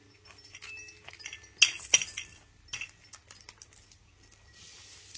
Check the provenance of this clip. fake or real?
real